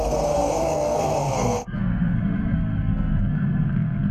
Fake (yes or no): yes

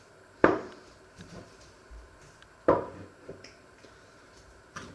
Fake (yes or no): yes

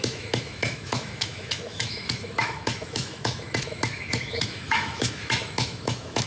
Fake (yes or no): yes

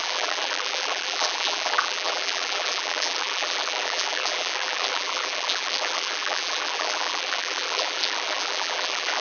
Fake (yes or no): yes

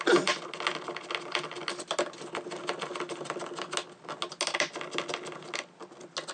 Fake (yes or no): no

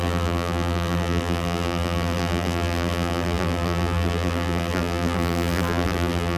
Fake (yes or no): yes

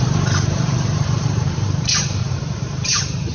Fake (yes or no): yes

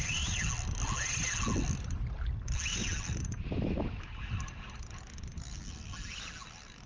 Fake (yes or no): no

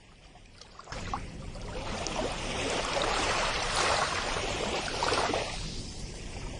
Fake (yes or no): yes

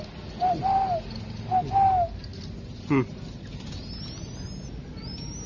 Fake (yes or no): no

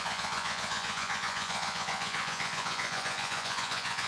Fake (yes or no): yes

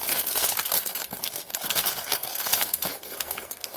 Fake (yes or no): yes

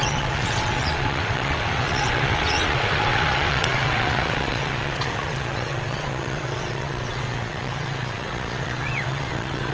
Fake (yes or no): yes